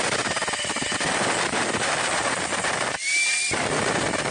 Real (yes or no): no